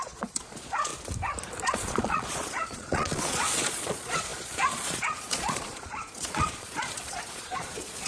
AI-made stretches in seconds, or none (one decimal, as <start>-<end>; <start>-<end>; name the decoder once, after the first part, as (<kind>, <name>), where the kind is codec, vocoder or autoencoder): 0.0-0.9 (vocoder, Vocos); 1.6-8.1